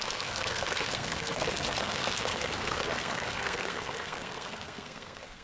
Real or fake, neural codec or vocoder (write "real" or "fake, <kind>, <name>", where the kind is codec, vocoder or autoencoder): fake, codec, SNAC